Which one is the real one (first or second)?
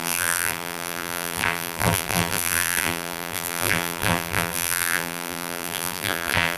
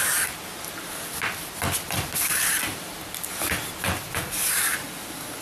second